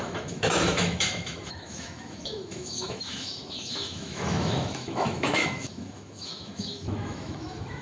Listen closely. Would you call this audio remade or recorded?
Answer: remade